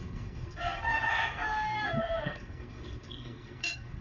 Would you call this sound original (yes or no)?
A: no